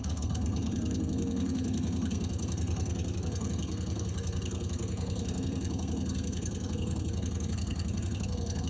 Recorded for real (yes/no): no